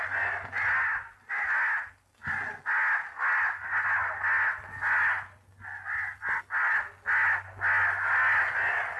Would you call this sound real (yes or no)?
yes